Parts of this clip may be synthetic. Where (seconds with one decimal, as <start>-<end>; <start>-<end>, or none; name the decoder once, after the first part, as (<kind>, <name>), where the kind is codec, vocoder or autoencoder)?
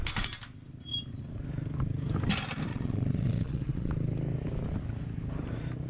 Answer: 2.7-3.9 (vocoder, Vocos)